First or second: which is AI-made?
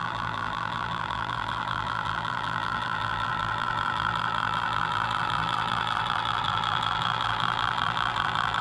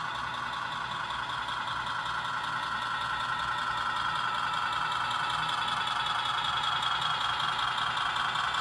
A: first